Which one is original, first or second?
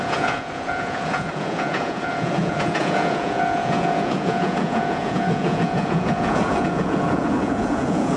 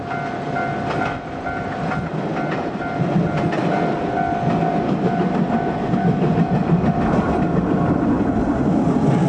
second